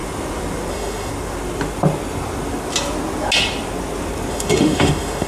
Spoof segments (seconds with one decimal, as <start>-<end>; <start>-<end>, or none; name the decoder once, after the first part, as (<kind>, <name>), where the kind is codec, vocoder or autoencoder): 0.7-1.1 (autoencoder, DAC-VAE); 4.3-5.3